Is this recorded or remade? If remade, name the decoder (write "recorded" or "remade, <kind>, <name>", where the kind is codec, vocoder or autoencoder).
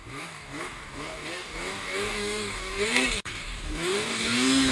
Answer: remade, codec, DAC